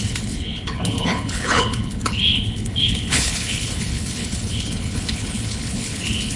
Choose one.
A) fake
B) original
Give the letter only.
A